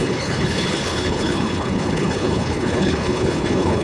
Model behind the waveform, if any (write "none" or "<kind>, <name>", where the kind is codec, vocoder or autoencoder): codec, HILCodec